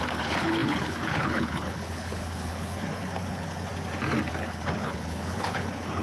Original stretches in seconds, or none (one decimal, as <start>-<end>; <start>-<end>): 3.7-4.3